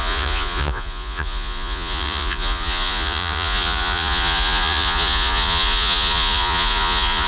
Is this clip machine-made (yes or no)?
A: yes